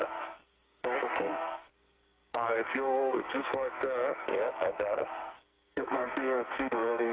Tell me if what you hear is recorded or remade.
remade